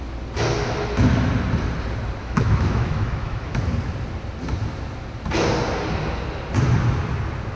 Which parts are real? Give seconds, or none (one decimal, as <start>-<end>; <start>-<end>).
0.0-2.2; 3.6-7.6